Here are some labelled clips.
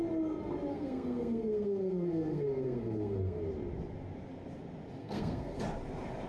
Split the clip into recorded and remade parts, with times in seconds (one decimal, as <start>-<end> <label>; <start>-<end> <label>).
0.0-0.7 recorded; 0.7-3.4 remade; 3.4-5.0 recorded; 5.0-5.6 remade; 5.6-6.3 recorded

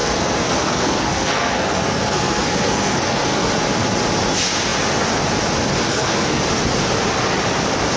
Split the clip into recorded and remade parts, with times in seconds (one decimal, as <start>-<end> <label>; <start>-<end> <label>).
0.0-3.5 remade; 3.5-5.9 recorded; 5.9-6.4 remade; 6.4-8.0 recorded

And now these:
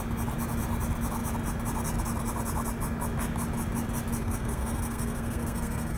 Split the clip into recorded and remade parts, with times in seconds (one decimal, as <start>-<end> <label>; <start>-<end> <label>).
0.0-4.2 recorded; 4.2-6.0 remade

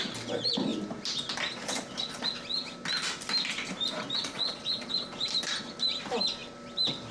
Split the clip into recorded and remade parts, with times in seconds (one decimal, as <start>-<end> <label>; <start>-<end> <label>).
0.0-4.2 recorded; 4.2-4.9 remade; 4.9-7.1 recorded

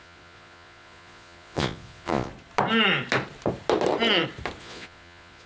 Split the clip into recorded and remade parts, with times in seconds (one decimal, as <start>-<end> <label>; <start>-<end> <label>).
0.0-2.3 remade; 2.3-4.6 recorded; 4.6-5.5 remade